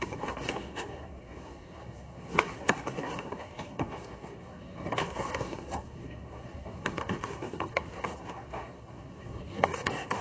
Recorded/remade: remade